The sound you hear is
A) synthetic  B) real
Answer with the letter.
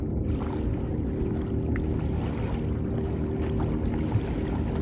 B